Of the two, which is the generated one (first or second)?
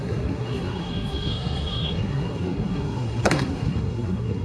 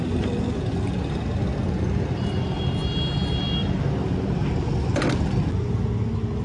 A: first